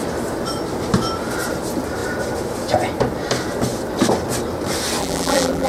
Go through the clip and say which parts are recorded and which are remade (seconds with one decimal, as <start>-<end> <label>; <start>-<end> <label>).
0.0-5.0 recorded; 5.0-5.7 remade